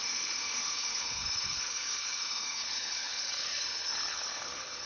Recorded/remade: remade